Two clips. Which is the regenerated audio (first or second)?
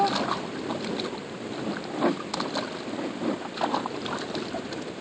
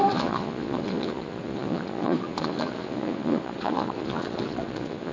second